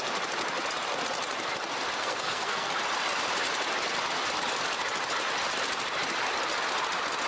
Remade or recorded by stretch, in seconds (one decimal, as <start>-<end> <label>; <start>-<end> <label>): 0.0-2.0 recorded; 2.0-2.7 remade; 2.7-7.3 recorded